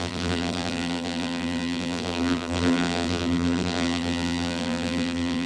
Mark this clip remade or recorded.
remade